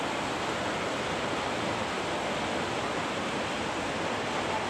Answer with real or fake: real